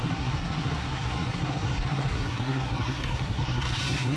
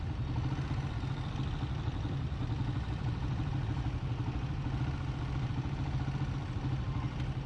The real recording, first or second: second